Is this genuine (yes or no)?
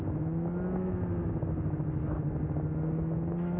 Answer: yes